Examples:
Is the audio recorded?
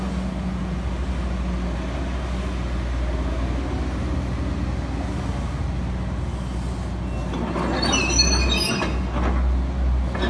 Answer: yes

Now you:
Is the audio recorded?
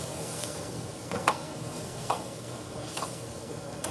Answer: no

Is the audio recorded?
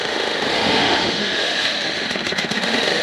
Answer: no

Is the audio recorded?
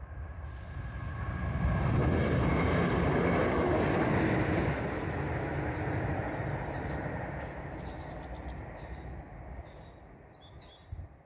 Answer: yes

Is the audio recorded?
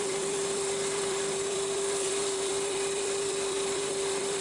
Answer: no